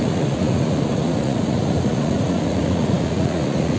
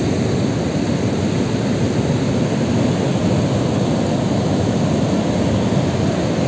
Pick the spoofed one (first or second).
first